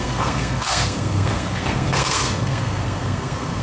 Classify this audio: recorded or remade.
remade